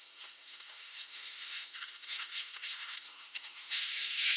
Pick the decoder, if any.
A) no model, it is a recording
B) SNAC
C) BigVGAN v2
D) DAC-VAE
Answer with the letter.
B